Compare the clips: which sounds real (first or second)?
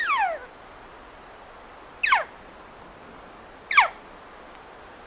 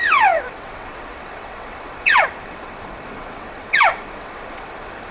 first